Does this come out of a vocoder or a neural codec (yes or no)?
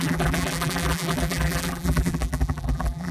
yes